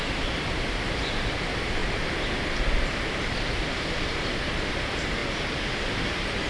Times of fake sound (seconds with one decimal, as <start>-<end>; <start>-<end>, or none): 0.0-5.2; 5.9-6.5